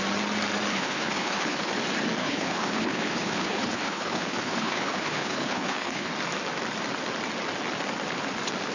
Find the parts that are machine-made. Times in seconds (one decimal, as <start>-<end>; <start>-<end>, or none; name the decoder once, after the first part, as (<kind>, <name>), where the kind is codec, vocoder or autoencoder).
0.7-1.7 (codec, HILCodec); 2.2-6.1